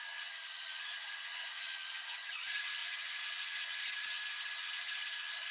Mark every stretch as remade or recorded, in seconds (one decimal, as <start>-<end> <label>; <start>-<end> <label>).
0.0-5.5 remade